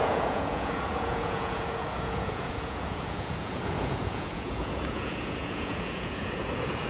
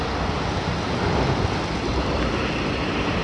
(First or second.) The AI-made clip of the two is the first